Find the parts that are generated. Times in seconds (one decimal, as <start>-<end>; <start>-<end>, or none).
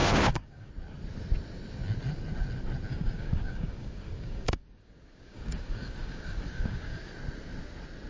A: 0.0-0.7; 2.9-7.1